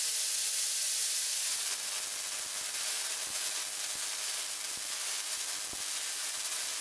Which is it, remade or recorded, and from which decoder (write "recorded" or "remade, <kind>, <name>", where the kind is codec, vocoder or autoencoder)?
recorded